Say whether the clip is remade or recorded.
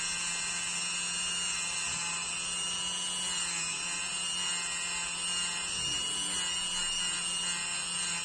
recorded